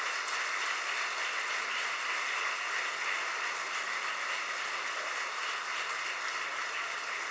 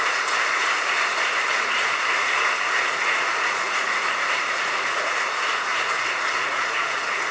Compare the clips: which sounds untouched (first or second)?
first